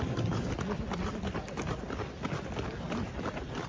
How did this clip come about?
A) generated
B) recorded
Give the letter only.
B